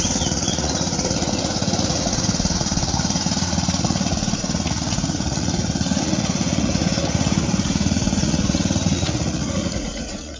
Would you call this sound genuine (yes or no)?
no